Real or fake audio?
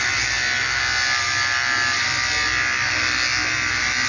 real